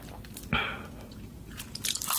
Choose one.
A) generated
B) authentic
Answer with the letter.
B